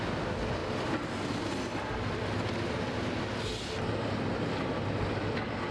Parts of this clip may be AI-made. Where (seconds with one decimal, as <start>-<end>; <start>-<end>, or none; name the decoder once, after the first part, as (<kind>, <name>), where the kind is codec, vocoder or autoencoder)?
none